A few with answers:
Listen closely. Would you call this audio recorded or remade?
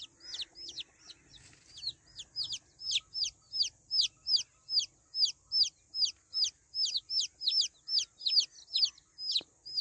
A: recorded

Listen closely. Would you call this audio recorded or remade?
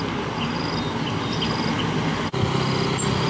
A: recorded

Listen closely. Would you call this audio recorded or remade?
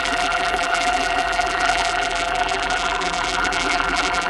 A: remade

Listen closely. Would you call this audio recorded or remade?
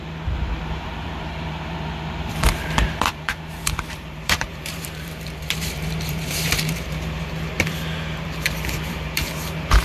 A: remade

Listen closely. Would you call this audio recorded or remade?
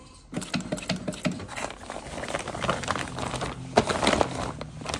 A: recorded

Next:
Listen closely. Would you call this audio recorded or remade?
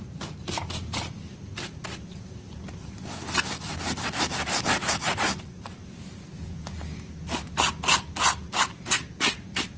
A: recorded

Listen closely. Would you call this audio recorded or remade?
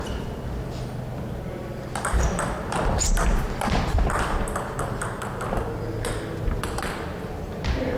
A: remade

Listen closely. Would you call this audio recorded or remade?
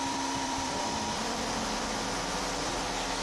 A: remade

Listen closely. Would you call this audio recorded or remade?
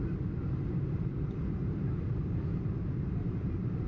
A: remade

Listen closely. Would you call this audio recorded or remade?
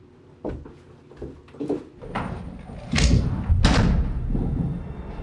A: recorded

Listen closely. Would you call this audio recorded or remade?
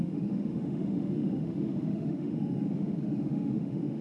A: remade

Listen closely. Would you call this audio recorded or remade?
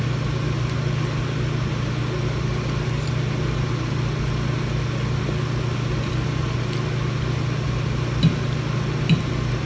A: recorded